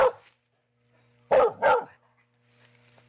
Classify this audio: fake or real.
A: real